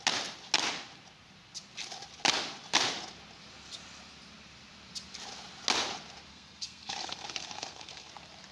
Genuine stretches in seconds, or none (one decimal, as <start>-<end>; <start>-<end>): 0.0-6.3; 8.1-8.5

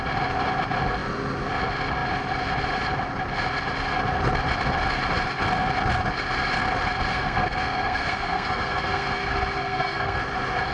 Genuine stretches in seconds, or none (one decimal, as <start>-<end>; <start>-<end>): 0.0-7.1; 10.2-10.7

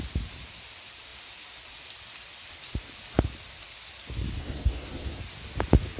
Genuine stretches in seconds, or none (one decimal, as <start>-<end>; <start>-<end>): 0.0-4.4; 5.2-6.0

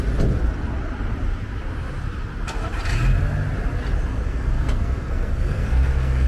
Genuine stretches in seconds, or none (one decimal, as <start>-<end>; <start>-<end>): 0.0-4.1

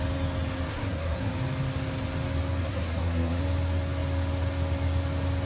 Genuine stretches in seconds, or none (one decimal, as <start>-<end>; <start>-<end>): 0.0-0.7; 1.3-2.6; 3.4-5.5

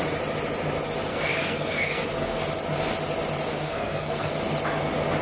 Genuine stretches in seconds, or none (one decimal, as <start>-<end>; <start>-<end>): 0.0-1.1; 2.4-3.5; 4.3-5.2

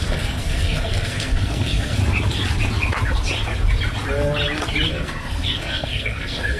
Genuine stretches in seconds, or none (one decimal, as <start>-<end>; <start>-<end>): 2.0-4.9